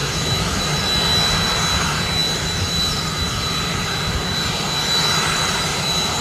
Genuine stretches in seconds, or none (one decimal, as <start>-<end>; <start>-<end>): 0.6-6.2